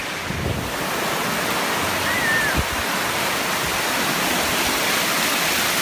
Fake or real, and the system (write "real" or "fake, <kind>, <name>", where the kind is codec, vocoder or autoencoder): real